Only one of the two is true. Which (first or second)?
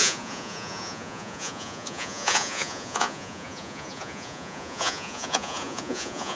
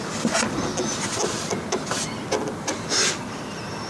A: second